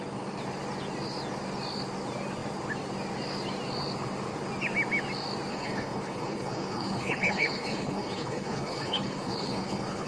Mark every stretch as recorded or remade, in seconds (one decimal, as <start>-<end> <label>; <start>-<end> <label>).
0.0-5.5 recorded; 5.5-10.1 remade